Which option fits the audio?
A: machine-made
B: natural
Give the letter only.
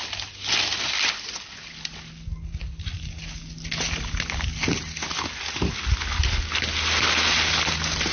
B